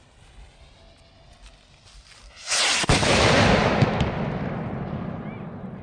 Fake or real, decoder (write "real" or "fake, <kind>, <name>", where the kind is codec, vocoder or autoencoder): real